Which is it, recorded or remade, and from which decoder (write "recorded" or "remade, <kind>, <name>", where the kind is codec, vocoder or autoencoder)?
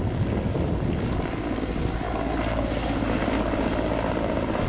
recorded